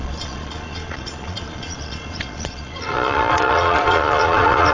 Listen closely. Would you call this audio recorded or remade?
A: remade